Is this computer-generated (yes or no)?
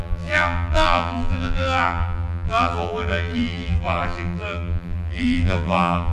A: yes